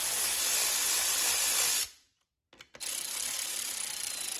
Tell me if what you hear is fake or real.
real